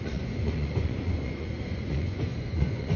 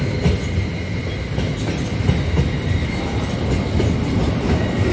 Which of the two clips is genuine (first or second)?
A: second